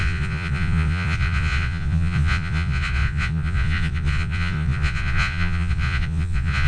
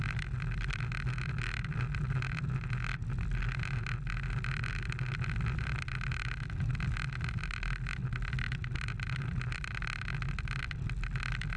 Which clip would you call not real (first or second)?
first